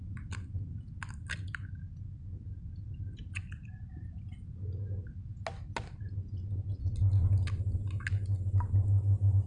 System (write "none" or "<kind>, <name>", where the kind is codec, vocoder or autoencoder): none